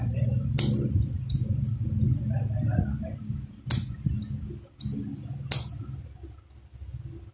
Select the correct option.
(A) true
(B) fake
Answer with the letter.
A